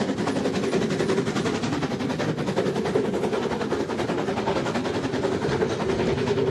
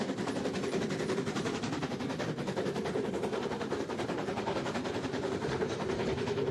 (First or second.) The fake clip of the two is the second